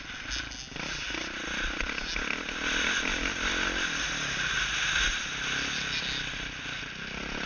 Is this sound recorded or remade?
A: recorded